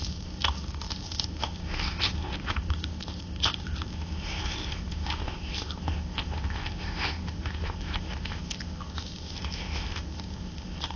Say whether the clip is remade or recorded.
remade